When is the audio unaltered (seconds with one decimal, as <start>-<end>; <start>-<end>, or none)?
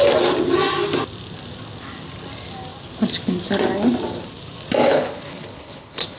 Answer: 0.0-4.9